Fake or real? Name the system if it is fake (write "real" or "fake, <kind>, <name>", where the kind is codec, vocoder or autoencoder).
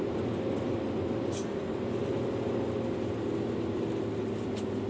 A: real